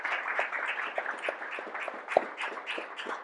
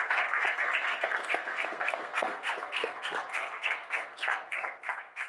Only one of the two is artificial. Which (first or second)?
second